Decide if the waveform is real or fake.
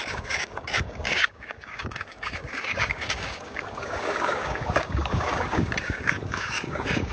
fake